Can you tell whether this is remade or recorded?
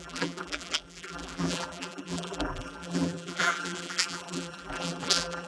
remade